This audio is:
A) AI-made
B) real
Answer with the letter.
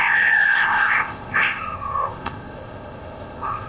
A